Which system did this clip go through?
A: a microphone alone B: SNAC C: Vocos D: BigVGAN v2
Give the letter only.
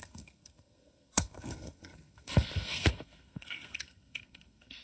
B